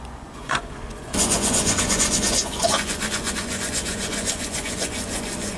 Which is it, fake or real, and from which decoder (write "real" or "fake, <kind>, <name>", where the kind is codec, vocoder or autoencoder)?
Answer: fake, vocoder, Vocos